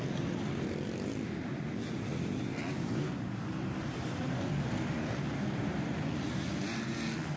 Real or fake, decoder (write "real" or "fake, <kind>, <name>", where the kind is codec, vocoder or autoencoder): real